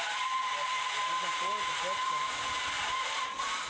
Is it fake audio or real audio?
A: real